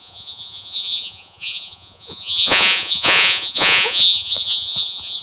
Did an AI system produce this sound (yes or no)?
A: yes